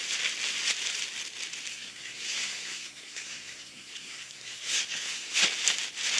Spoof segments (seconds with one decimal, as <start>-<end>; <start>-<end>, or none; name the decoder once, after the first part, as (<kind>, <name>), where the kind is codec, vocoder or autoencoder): 1.7-5.4 (codec, SNAC)